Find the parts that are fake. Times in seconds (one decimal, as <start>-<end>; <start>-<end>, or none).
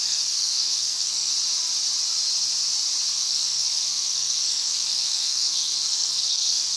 0.0-1.3; 3.1-6.8